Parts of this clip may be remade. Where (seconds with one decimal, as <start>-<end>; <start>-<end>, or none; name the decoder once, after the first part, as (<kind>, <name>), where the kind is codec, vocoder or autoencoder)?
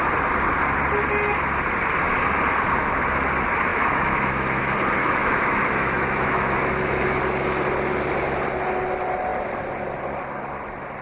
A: 3.7-4.6 (autoencoder, DAC-VAE); 5.0-7.2